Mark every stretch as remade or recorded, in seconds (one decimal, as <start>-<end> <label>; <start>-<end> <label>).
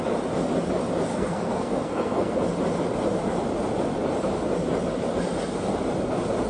0.0-1.1 recorded; 1.1-2.4 remade; 2.4-6.5 recorded